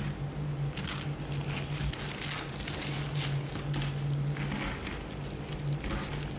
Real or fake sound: real